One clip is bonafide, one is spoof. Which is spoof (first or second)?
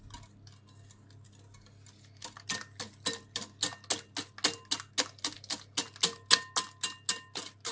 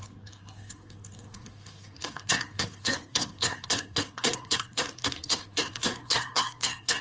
second